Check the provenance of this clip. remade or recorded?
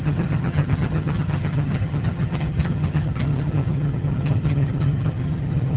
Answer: remade